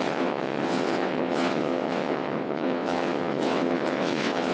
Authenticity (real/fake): fake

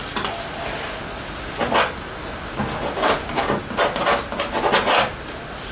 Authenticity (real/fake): real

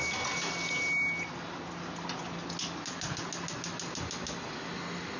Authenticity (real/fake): real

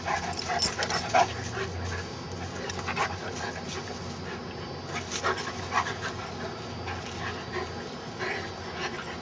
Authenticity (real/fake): real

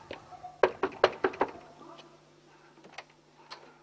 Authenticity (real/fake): real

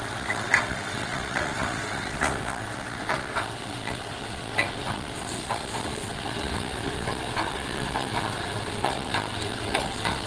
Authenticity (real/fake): fake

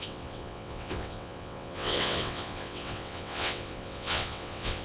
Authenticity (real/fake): fake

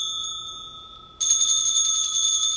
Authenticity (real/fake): real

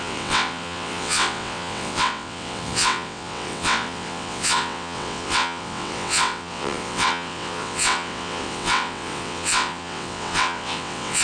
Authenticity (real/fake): fake